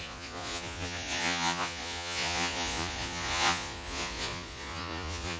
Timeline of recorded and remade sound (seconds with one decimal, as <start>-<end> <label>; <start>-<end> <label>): 0.0-5.4 remade